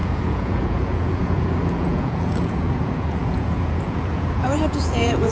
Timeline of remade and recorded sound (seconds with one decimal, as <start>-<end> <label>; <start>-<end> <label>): 0.0-5.3 remade